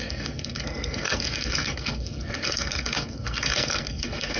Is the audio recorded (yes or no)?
no